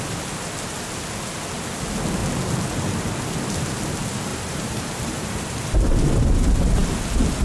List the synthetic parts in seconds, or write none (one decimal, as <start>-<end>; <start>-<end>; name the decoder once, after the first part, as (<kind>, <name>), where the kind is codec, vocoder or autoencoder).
4.3-5.6 (vocoder, BigVGAN v2)

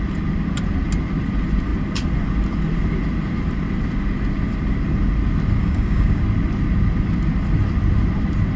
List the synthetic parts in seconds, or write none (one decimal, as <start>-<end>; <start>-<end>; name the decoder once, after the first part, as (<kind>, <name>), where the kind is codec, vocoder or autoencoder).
5.6-6.2 (codec, DAC)

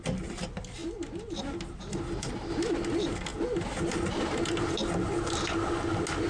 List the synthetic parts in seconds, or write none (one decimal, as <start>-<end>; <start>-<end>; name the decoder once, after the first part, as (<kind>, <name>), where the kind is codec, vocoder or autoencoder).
none

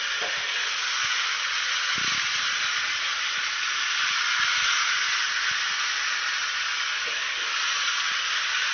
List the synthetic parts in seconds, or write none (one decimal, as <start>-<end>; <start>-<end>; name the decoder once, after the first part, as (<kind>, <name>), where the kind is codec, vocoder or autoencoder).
none

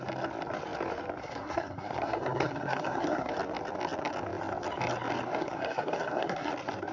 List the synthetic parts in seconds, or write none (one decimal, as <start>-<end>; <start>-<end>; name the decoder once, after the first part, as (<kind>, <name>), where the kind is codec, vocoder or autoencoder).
1.2-3.3 (codec, SNAC); 5.4-6.5

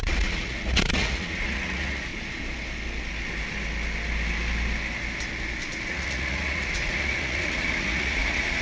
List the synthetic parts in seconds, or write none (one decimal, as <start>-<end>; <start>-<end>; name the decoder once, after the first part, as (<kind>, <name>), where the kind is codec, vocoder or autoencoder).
0.0-2.1 (vocoder, Vocos); 5.9-8.6

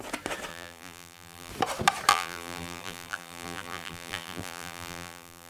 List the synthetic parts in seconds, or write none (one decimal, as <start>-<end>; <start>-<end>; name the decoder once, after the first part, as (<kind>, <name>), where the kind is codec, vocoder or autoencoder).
0.5-1.5 (vocoder, BigVGAN v2); 2.1-5.5

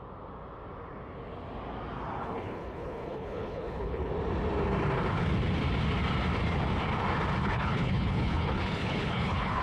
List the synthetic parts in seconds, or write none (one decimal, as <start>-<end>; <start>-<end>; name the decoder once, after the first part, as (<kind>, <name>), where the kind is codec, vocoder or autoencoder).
2.2-4.1 (codec, HILCodec); 7.4-9.6